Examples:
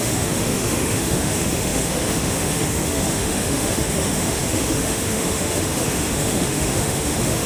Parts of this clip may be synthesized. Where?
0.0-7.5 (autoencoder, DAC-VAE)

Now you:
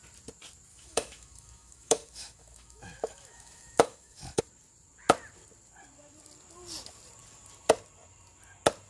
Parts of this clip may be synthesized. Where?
0.7-4.4 (autoencoder, DAC-VAE)

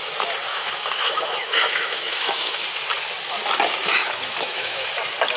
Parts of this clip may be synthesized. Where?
0.5-2.6 (autoencoder, DAC-VAE); 4.0-4.9

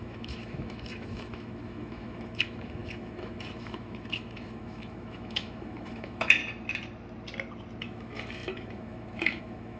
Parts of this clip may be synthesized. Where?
0.0-6.4 (autoencoder, DAC-VAE); 7.8-9.8

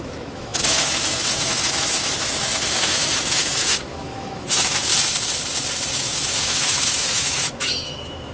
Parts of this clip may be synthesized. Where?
0.0-4.9 (autoencoder, DAC-VAE); 6.0-8.3